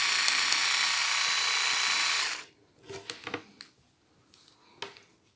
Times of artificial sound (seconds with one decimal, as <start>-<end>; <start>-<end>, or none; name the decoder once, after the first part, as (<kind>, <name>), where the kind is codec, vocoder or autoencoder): none